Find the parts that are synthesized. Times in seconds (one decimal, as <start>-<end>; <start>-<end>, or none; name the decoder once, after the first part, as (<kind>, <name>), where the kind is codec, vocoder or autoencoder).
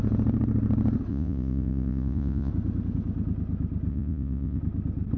1.1-2.5 (vocoder, Vocos); 3.9-4.6